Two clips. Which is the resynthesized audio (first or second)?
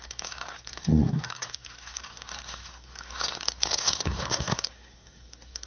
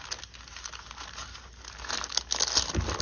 first